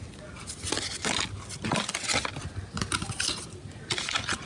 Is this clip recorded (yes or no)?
yes